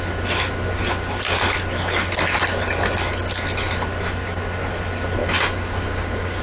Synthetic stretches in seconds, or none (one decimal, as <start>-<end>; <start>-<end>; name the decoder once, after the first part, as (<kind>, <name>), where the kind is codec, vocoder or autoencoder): 5.2-6.4 (codec, DAC)